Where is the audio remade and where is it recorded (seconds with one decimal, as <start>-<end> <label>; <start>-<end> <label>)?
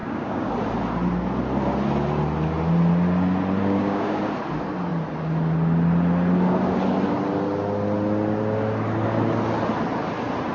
0.0-0.5 remade; 0.5-3.6 recorded; 3.6-4.2 remade; 4.2-10.5 recorded